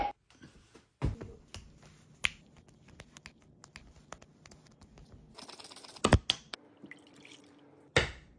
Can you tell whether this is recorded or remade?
recorded